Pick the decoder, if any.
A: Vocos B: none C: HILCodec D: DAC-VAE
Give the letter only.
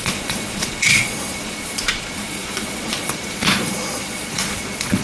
A